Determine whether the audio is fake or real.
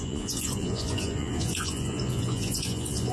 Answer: fake